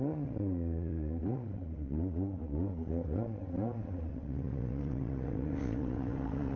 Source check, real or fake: fake